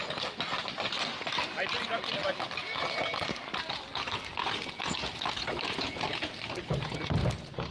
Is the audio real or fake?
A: real